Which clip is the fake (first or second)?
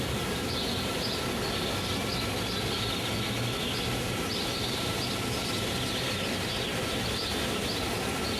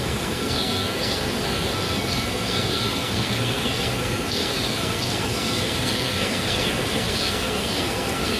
second